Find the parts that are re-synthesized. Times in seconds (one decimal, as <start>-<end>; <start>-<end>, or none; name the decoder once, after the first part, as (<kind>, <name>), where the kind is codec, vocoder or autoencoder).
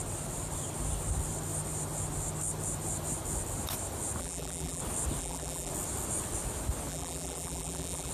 4.2-4.8 (vocoder, BigVGAN v2); 5.2-5.7; 6.9-8.1